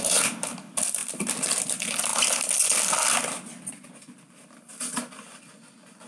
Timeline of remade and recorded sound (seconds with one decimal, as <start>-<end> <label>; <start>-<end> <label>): 0.0-6.1 recorded